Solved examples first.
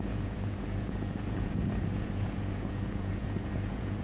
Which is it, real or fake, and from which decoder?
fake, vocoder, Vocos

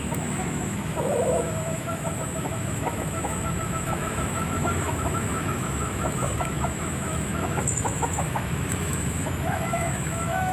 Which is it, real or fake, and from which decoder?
fake, autoencoder, DAC-VAE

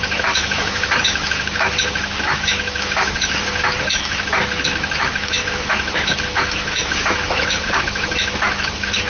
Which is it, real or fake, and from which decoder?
fake, autoencoder, DAC-VAE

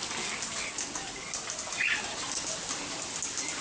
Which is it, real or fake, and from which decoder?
real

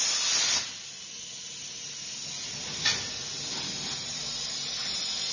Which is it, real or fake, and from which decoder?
real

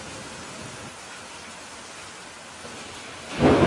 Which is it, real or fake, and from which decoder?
real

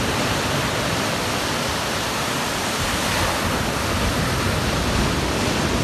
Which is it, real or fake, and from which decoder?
real